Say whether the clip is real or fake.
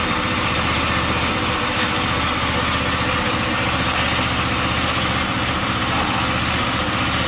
real